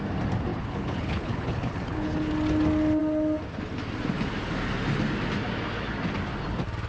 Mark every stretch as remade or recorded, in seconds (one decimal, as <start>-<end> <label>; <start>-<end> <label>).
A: 0.0-0.5 recorded; 0.5-2.3 remade; 2.3-6.9 recorded